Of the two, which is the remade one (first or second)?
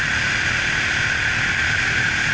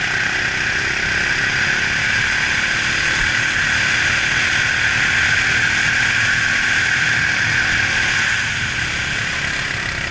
first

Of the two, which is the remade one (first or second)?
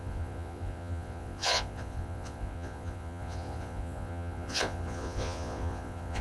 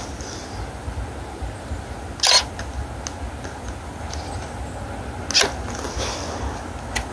first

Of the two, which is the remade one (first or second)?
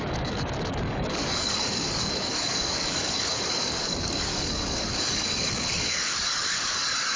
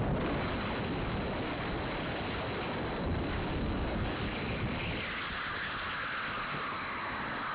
first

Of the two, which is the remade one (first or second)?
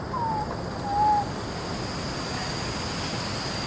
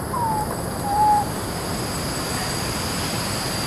second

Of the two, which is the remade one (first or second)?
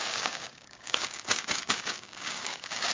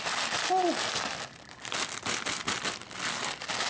first